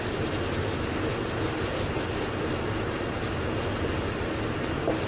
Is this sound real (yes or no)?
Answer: yes